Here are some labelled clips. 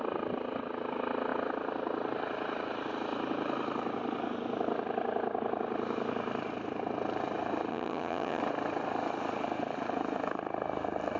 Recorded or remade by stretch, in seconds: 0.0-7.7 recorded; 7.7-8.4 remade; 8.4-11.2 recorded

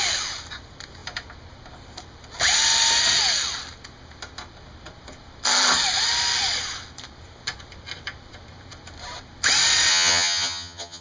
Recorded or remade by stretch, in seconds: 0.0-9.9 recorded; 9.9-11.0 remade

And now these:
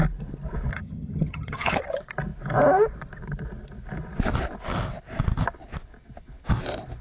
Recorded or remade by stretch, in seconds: 0.0-0.7 recorded; 0.7-1.8 remade; 1.8-7.0 recorded

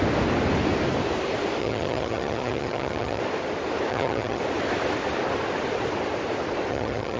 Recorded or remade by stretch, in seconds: 0.0-1.6 recorded; 1.6-3.2 remade; 3.2-3.9 recorded; 3.9-4.4 remade; 4.4-6.7 recorded; 6.7-7.2 remade

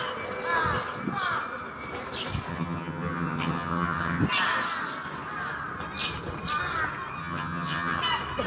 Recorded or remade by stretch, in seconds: 0.0-2.5 recorded; 2.5-4.2 remade; 4.2-7.2 recorded; 7.2-8.0 remade; 8.0-8.5 recorded

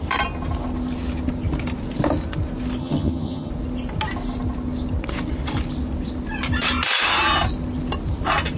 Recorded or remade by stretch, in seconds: 0.0-2.8 recorded; 2.8-3.5 remade; 3.5-8.6 recorded

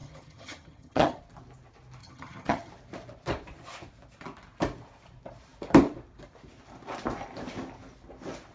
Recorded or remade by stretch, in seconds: 0.0-1.2 remade; 1.2-2.0 recorded; 2.0-2.7 remade; 2.7-8.5 recorded

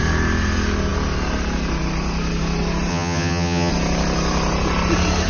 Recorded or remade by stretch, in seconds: 0.0-2.9 recorded; 2.9-3.7 remade; 3.7-5.3 recorded